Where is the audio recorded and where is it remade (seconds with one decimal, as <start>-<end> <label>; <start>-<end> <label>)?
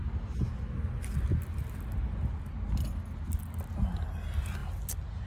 0.0-5.3 recorded